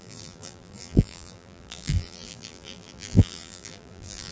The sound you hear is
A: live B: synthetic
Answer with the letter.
B